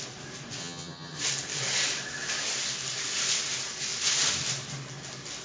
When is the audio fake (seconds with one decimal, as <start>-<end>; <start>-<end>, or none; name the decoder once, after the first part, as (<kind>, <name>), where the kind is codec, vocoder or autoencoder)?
0.6-1.2 (vocoder, HiFi-GAN)